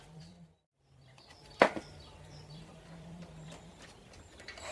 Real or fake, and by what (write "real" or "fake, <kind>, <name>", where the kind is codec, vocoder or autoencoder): fake, vocoder, BigVGAN v2